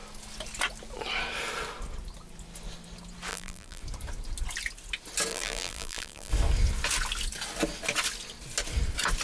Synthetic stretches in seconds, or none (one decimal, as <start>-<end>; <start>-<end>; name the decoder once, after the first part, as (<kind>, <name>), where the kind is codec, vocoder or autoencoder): 3.3-3.8 (vocoder, BigVGAN v2); 5.3-6.3